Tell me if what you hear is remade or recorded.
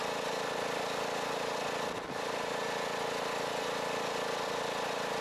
recorded